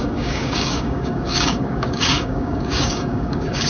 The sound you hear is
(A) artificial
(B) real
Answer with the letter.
A